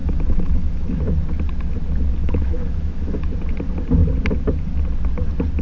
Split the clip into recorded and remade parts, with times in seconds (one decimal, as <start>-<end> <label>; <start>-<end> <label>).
0.0-1.0 remade; 1.0-2.2 recorded; 2.2-3.2 remade; 3.2-5.6 recorded